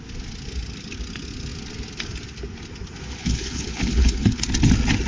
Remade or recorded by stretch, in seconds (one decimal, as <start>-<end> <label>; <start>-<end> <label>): 0.0-3.2 recorded; 3.2-4.4 remade; 4.4-5.1 recorded